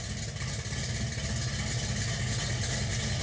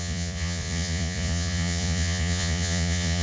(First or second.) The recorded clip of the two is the first